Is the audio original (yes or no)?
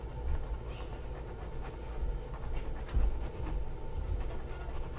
yes